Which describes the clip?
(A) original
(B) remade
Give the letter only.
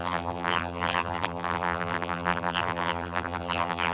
B